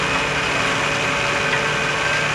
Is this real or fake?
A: real